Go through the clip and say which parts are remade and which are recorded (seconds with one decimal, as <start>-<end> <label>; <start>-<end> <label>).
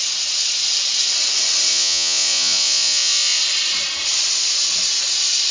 0.0-1.7 recorded; 1.7-3.4 remade; 3.4-5.5 recorded